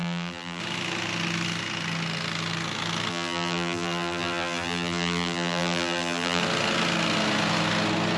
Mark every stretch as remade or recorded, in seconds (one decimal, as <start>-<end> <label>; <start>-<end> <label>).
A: 0.0-0.6 remade; 0.6-3.1 recorded; 3.1-6.4 remade; 6.4-8.2 recorded